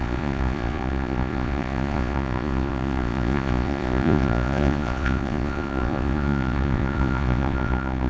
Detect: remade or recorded remade